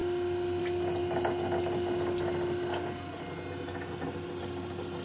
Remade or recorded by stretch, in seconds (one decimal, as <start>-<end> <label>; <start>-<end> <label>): 0.0-5.0 recorded